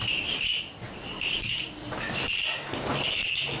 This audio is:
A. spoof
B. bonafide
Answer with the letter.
B